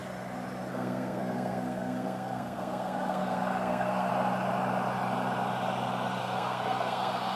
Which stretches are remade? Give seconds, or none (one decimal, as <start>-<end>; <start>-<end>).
0.7-4.1; 6.2-7.4